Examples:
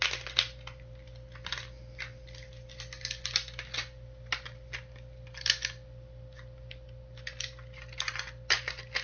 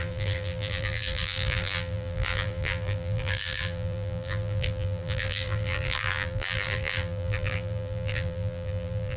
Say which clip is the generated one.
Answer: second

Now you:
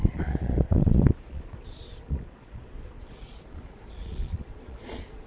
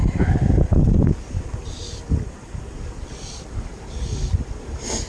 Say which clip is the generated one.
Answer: first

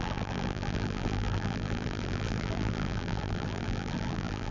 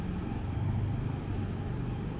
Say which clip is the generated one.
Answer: first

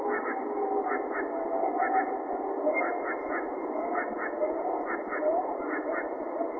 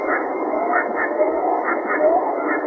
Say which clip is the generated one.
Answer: second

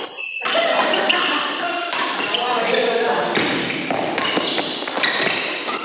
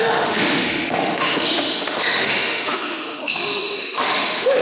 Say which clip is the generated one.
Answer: second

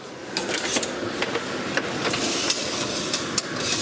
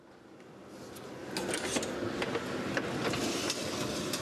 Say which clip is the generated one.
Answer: first